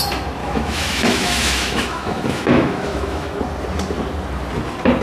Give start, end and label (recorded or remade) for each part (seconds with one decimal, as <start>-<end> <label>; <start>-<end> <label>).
0.0-0.4 recorded; 0.4-3.4 remade; 3.4-5.0 recorded